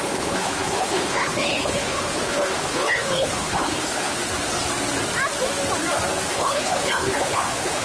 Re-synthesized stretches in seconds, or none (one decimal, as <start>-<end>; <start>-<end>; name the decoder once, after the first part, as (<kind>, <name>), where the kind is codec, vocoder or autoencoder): 0.0-4.2 (codec, HILCodec); 6.3-7.8